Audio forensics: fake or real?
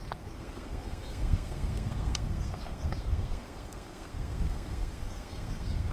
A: fake